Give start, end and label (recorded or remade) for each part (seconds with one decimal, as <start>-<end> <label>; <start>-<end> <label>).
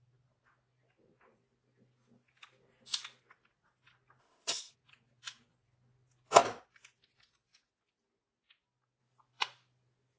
0.0-4.2 recorded; 4.2-4.7 remade; 4.7-10.2 recorded